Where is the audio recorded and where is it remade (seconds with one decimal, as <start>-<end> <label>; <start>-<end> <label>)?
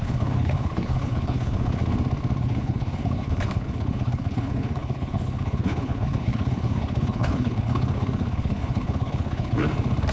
0.0-1.8 remade; 1.8-2.4 recorded; 2.4-9.6 remade; 9.6-10.1 recorded